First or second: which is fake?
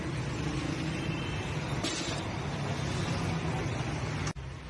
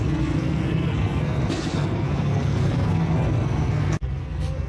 second